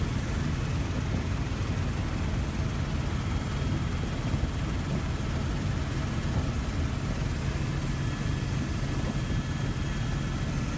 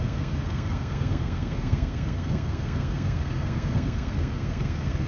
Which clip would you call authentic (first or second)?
first